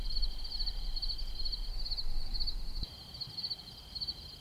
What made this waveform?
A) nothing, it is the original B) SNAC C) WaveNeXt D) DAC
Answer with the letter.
A